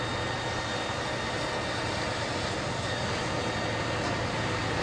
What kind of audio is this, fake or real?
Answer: real